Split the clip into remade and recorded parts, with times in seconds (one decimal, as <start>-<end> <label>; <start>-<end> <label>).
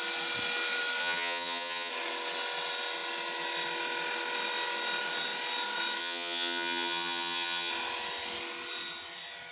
0.0-1.0 recorded; 1.0-1.9 remade; 1.9-6.0 recorded; 6.0-7.7 remade; 7.7-9.5 recorded